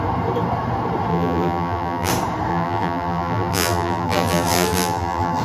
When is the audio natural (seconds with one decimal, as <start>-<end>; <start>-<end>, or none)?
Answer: 0.0-1.1; 2.1-2.5